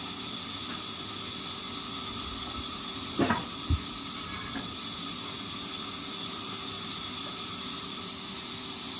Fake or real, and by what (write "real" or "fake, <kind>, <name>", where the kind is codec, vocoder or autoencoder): real